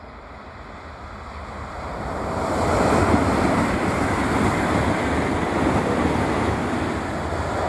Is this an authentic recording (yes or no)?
yes